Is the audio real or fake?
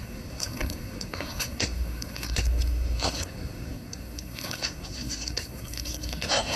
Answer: fake